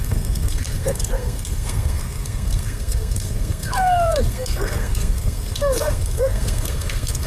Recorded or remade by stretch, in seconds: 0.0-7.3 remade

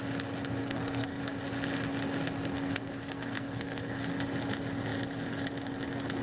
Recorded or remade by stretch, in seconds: 0.0-0.6 recorded; 0.6-1.2 remade; 1.2-2.5 recorded; 2.5-4.0 remade; 4.0-6.2 recorded

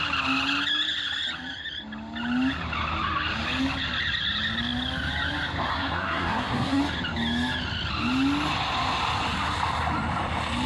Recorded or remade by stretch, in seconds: 0.0-5.7 recorded; 5.7-6.8 remade; 6.8-10.7 recorded

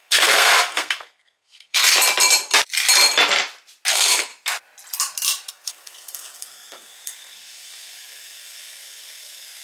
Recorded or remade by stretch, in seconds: 0.0-1.9 remade; 1.9-3.9 recorded; 3.9-4.3 remade; 4.3-5.5 recorded; 5.5-9.6 remade

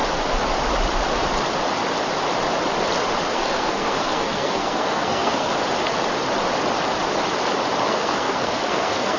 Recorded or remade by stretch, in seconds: 0.0-3.3 recorded; 3.3-5.5 remade; 5.5-7.8 recorded; 7.8-9.2 remade

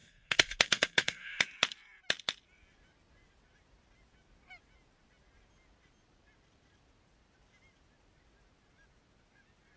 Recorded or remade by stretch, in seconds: 0.0-1.4 remade; 1.4-9.8 recorded

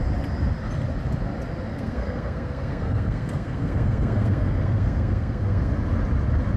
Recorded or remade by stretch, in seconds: 0.0-1.7 recorded; 1.7-5.7 remade; 5.7-6.6 recorded

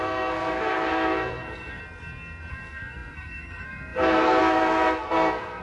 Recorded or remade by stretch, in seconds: 0.0-1.8 remade; 1.8-2.5 recorded; 2.5-5.6 remade